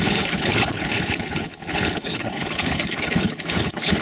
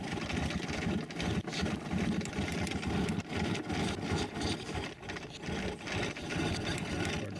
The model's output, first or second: first